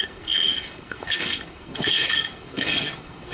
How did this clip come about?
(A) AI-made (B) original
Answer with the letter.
A